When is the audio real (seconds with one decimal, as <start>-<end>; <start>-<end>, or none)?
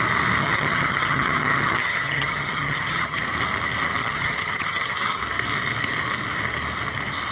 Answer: 0.0-0.4; 3.2-4.0; 5.2-7.3